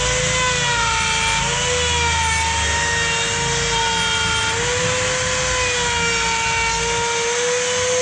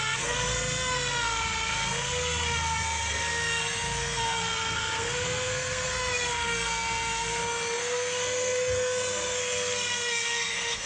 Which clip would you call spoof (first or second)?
second